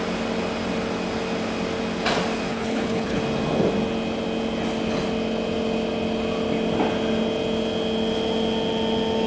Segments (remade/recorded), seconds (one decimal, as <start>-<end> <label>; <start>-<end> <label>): 0.0-2.5 recorded; 2.5-3.2 remade; 3.2-9.3 recorded